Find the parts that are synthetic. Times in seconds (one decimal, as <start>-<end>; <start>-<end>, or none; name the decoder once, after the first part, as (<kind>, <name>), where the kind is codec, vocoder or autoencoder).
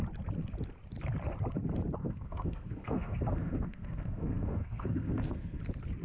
2.0-5.6 (codec, SNAC)